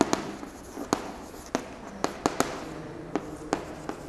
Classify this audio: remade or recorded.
recorded